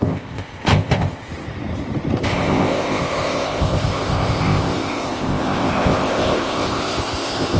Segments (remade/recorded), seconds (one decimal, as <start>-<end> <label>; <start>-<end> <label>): 0.0-1.3 remade; 1.3-2.2 recorded; 2.2-7.6 remade